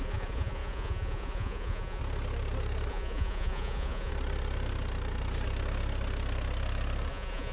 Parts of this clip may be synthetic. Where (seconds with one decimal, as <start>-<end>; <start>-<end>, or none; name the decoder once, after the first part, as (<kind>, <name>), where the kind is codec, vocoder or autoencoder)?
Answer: 0.0-2.0 (vocoder, Vocos); 2.9-4.1; 7.1-7.5